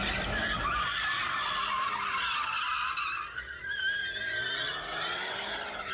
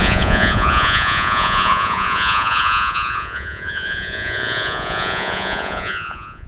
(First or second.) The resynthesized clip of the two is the second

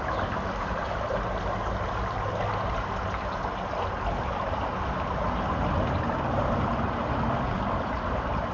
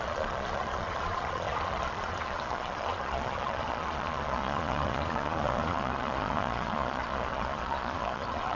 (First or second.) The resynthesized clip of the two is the second